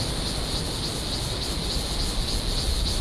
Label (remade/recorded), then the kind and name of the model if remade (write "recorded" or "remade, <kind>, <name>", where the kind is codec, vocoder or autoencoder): recorded